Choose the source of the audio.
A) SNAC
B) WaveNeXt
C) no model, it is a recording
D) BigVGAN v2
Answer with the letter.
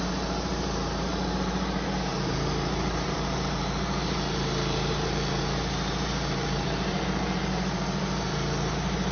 D